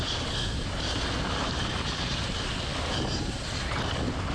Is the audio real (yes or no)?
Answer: yes